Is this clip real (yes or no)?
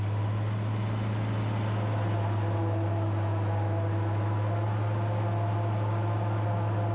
yes